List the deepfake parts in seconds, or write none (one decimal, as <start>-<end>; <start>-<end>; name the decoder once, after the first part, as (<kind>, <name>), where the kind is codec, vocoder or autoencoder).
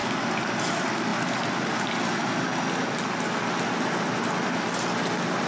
none